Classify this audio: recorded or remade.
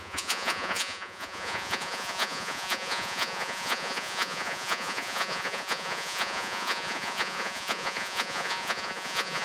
remade